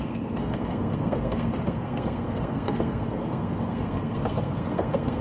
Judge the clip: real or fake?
fake